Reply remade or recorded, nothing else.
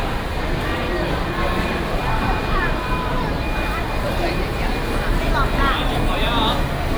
remade